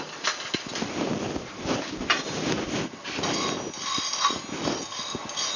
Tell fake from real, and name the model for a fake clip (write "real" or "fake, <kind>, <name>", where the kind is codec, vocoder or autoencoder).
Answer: real